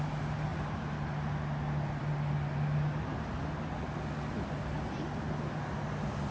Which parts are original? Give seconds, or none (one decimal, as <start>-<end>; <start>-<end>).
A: 0.0-6.3